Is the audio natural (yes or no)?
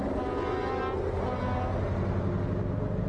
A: yes